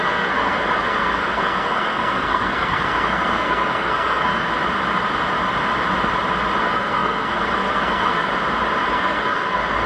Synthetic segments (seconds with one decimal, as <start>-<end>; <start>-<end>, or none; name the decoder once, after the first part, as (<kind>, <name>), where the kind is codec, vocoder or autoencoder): 0.0-4.5 (codec, SNAC); 6.6-8.3; 8.9-9.9

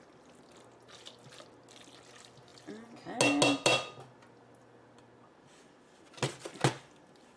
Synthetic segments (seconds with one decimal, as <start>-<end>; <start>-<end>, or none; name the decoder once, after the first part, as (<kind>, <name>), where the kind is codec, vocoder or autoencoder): none

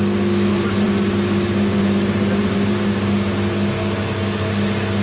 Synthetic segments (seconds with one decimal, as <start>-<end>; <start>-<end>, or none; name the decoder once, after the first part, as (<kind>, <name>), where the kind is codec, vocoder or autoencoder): 0.5-2.9 (vocoder, BigVGAN v2)